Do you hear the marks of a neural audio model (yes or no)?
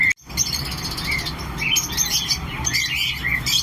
no